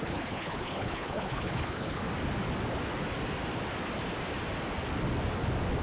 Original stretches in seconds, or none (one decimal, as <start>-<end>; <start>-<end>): 2.0-5.8